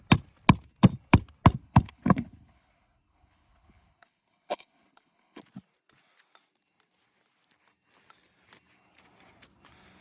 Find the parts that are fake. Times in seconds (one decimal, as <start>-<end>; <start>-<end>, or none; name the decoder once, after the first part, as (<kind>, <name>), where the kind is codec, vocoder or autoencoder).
1.6-5.4 (codec, HILCodec)